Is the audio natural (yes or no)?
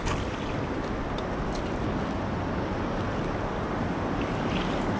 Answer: yes